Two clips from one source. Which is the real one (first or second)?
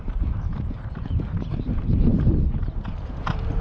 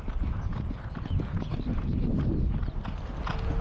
second